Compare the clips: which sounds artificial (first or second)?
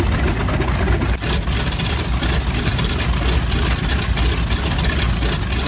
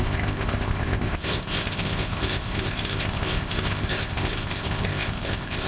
second